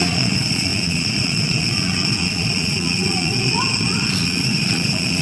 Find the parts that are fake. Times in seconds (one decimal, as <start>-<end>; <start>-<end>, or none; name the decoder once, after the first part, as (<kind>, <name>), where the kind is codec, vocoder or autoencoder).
0.0-5.2 (vocoder, Vocos)